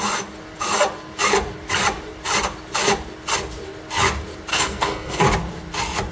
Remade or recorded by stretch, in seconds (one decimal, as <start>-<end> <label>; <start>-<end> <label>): 0.0-4.5 recorded; 4.5-5.2 remade; 5.2-6.1 recorded